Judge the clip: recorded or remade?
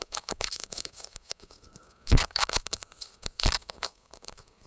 remade